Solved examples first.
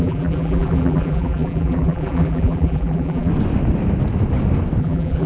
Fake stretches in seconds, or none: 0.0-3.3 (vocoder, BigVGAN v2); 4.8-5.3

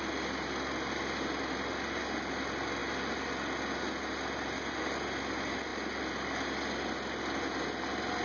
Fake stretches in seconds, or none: none

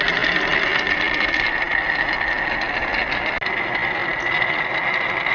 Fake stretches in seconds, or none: none

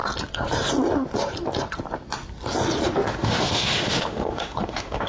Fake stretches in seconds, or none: 3.1-5.1 (autoencoder, DAC-VAE)

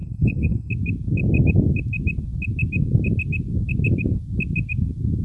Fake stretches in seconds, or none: 0.0-0.7 (codec, HILCodec)

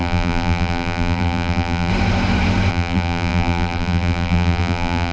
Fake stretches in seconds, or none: 0.0-1.9 (vocoder, BigVGAN v2); 2.7-5.1